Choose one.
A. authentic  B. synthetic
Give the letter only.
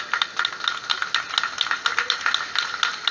A